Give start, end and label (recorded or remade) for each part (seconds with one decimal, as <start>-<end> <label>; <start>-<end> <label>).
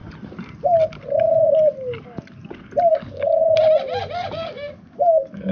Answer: 0.0-2.9 recorded; 2.9-3.4 remade; 3.4-4.3 recorded; 4.3-5.5 remade